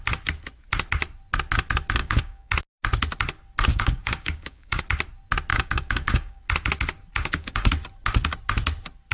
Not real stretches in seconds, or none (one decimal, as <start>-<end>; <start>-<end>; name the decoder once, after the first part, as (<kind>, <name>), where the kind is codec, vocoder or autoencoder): 2.0-2.5 (codec, DAC); 3.7-4.8; 5.5-6.4; 7.1-7.7